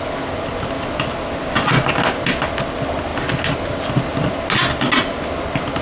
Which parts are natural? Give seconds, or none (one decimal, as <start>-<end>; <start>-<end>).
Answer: 0.0-5.8